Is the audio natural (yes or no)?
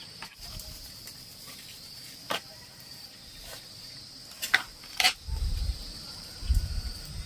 no